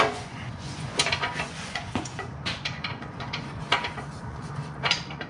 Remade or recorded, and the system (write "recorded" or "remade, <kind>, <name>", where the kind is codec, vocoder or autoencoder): remade, vocoder, Vocos